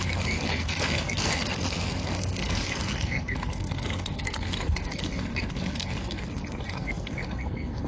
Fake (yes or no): yes